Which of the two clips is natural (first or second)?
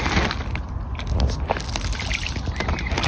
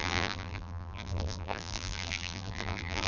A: first